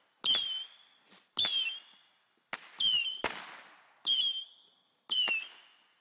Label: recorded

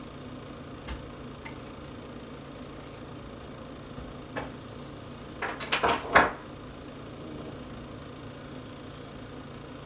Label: recorded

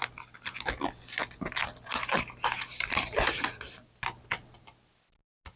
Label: recorded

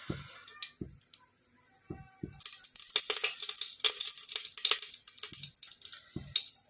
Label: recorded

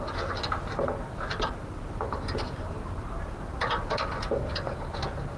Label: recorded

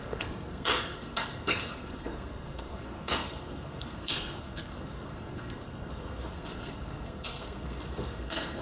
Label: remade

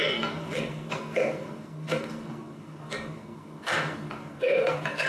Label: remade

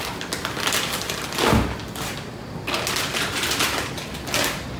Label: recorded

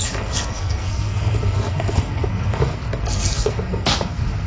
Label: remade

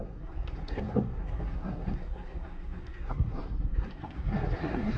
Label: remade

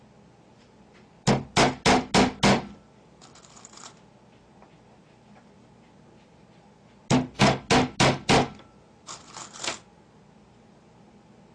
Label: recorded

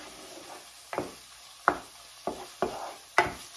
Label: recorded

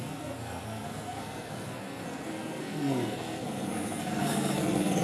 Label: remade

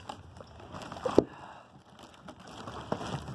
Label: recorded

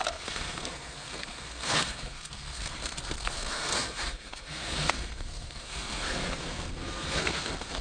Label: remade